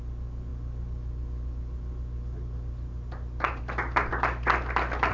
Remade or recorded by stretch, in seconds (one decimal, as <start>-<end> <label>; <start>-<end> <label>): 0.0-5.1 recorded